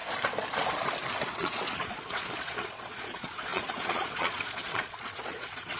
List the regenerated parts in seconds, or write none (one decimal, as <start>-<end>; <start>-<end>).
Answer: 1.3-5.8